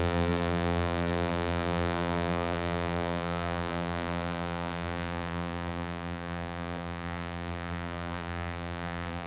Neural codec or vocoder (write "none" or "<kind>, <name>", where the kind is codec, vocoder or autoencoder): vocoder, BigVGAN v2